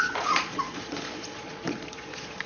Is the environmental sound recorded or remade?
remade